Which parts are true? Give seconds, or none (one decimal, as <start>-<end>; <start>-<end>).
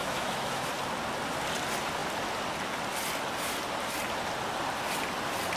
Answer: 0.7-5.6